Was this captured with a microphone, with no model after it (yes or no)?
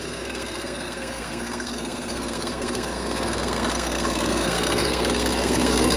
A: no